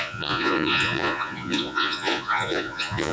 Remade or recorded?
remade